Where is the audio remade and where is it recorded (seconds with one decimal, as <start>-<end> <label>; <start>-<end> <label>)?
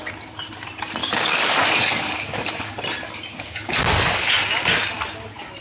0.0-1.0 recorded; 1.0-2.8 remade; 2.8-3.3 recorded; 3.3-4.3 remade; 4.3-5.6 recorded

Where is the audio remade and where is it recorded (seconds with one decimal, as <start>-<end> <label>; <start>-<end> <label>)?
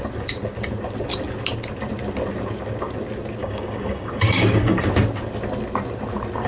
0.0-3.4 recorded; 3.4-4.8 remade; 4.8-6.5 recorded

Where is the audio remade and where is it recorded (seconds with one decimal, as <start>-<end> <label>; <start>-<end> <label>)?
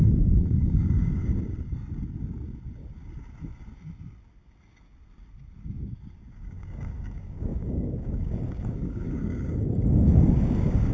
0.0-1.2 remade; 1.2-6.3 recorded; 6.3-10.9 remade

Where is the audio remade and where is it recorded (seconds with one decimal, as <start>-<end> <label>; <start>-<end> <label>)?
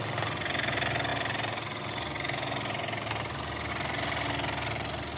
0.0-5.2 recorded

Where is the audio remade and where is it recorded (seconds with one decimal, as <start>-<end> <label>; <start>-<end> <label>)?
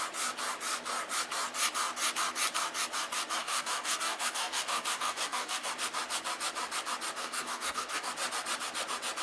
0.0-3.4 recorded; 3.4-5.7 remade; 5.7-7.2 recorded; 7.2-8.1 remade; 8.1-9.2 recorded